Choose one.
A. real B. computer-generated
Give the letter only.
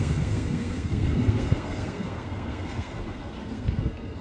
B